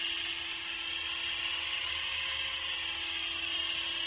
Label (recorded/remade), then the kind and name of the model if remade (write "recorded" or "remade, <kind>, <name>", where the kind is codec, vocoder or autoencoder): recorded